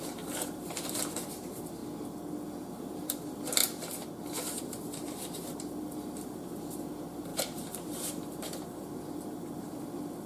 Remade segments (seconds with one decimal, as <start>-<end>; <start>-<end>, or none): 0.0-1.8; 2.7-3.6; 4.2-10.3

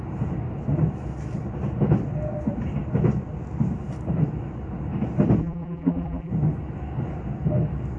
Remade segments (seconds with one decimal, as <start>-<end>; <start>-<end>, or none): 5.4-6.3

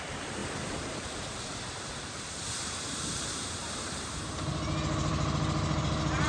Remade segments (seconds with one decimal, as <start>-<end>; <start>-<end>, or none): 0.4-4.2

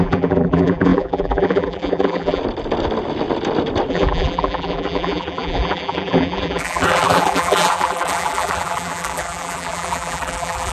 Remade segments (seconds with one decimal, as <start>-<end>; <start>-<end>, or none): 0.0-2.4; 3.9-10.7

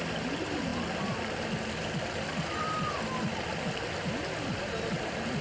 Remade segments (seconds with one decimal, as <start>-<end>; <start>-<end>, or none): 0.0-0.7; 3.9-5.4